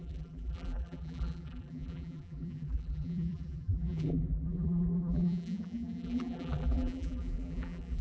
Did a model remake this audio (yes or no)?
yes